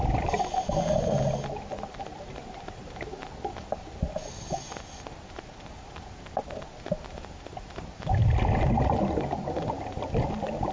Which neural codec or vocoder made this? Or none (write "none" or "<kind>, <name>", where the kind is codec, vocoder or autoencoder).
none